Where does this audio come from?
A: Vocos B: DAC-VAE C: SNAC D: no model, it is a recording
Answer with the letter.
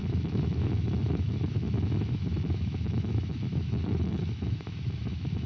B